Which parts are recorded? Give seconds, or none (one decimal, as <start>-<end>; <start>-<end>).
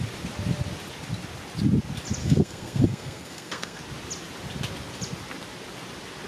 0.0-2.2; 3.8-6.3